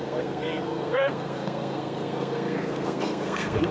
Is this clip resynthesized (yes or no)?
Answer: yes